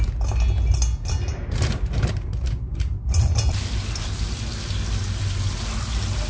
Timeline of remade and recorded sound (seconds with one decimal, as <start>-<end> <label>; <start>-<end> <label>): 0.0-1.3 recorded; 1.3-3.3 remade; 3.3-6.3 recorded